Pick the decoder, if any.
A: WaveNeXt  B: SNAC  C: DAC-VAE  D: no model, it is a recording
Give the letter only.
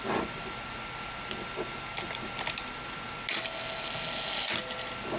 D